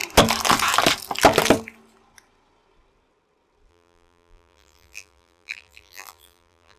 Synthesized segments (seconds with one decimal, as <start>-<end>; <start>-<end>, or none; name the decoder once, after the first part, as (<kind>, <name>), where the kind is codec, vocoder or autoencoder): 3.7-6.8 (vocoder, BigVGAN v2)